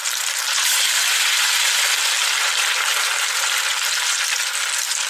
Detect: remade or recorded recorded